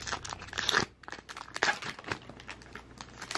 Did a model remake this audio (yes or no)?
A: no